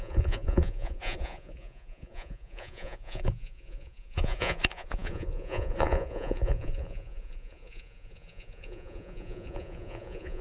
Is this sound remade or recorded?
remade